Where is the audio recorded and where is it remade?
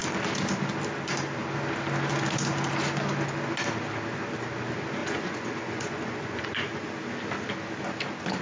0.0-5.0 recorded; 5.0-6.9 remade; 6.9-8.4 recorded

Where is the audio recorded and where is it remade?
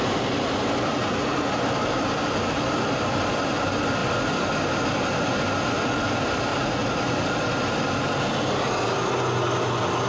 0.0-0.9 recorded; 0.9-1.6 remade; 1.6-6.5 recorded; 6.5-7.1 remade; 7.1-10.1 recorded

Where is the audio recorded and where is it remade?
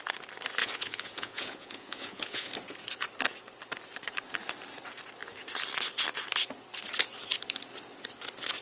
0.0-0.6 recorded; 0.6-2.5 remade; 2.5-8.6 recorded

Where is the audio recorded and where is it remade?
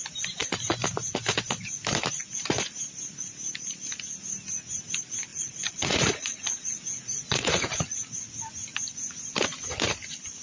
0.0-2.2 recorded; 2.2-2.7 remade; 2.7-5.3 recorded; 5.3-7.8 remade; 7.8-10.4 recorded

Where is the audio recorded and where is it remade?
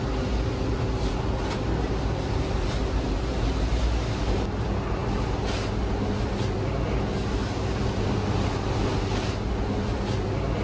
0.0-10.6 recorded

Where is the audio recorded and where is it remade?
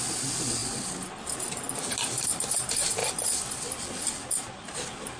0.0-5.2 recorded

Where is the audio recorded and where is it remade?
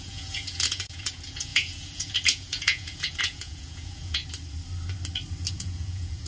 0.0-4.2 remade; 4.2-5.5 recorded; 5.5-6.3 remade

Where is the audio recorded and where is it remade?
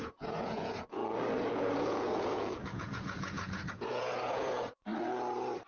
0.0-1.0 remade; 1.0-1.5 recorded; 1.5-4.9 remade; 4.9-5.7 recorded